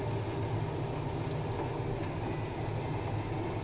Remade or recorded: recorded